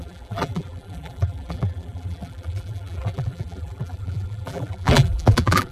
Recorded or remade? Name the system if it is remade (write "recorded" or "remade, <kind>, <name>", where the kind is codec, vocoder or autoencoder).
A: remade, vocoder, BigVGAN v2